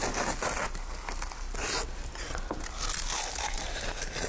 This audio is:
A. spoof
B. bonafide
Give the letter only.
B